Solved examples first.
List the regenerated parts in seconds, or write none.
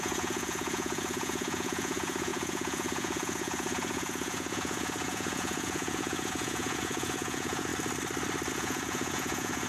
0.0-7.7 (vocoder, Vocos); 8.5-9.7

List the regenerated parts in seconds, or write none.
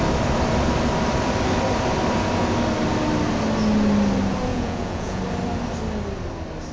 4.5-5.2 (vocoder, Vocos)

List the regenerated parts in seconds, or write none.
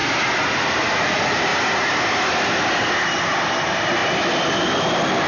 0.5-1.5 (vocoder, BigVGAN v2); 3.6-4.0